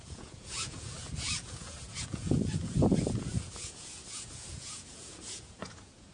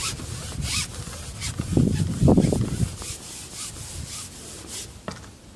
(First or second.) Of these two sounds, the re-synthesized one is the first